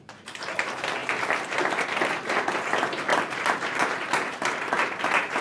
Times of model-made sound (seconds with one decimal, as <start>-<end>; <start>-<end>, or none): 0.0-5.4